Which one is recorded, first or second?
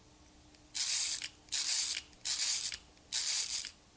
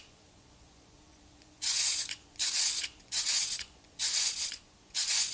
first